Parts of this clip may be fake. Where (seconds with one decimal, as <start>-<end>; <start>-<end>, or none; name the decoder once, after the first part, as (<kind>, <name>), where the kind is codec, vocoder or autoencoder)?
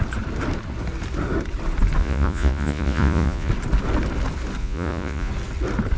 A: 2.0-3.5 (vocoder, Vocos); 4.6-5.3